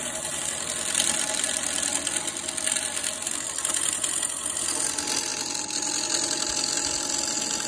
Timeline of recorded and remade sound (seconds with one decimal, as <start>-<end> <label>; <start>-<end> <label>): 0.0-7.7 recorded